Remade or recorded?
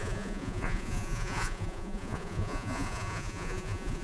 remade